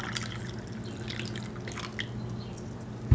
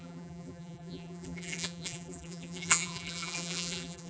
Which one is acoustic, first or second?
first